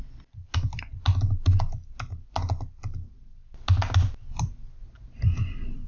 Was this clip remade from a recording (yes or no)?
no